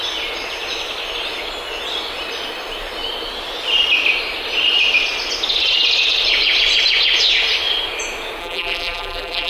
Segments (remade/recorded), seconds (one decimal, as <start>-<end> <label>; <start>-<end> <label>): 0.0-8.4 recorded; 8.4-9.5 remade